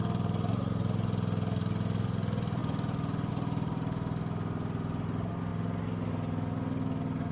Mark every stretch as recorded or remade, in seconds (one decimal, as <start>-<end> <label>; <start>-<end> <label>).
0.0-7.3 recorded